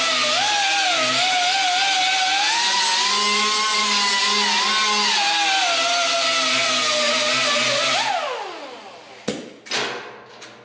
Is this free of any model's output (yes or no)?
yes